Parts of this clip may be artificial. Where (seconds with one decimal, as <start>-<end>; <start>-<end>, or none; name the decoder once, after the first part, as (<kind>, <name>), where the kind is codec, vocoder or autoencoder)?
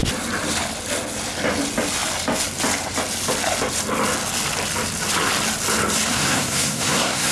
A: 6.1-7.3 (codec, SNAC)